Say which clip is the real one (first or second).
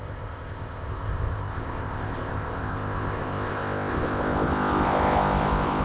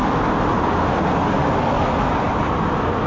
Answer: second